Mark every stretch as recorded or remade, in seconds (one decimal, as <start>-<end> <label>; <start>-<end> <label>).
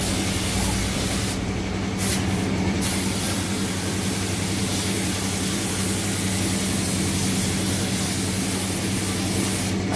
0.0-0.8 recorded; 0.8-1.6 remade; 1.6-2.1 recorded; 2.1-7.2 remade; 7.2-10.0 recorded